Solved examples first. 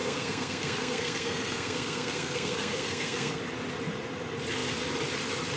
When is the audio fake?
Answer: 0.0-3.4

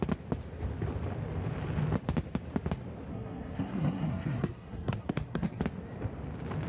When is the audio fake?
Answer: 3.1-5.6

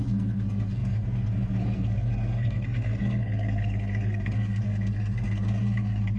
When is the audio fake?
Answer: 0.0-6.2

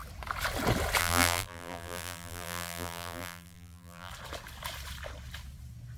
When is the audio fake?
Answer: 1.0-4.1

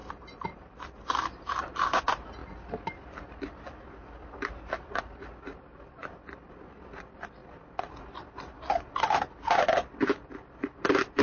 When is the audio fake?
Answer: 0.0-2.4; 5.6-7.4; 9.6-11.2

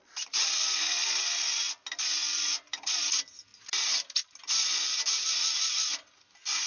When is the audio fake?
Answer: none

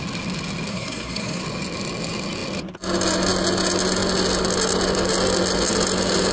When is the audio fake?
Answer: 0.7-1.4